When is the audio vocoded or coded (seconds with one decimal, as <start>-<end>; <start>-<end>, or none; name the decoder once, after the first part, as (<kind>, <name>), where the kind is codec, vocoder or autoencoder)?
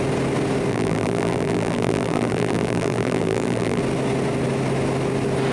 0.7-3.8 (vocoder, BigVGAN v2)